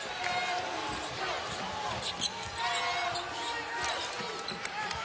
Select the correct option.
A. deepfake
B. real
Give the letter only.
B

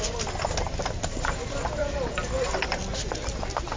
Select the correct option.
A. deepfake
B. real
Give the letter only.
B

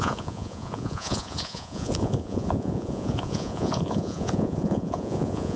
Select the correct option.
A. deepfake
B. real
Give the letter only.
A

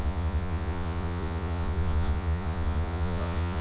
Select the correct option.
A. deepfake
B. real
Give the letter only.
A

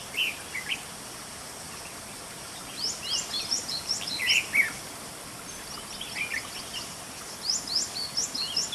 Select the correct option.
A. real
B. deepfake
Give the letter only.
A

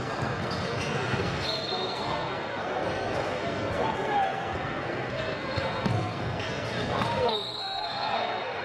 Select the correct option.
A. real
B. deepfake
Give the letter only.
B